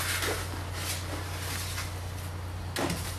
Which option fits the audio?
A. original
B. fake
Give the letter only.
A